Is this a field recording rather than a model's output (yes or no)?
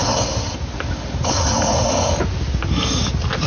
yes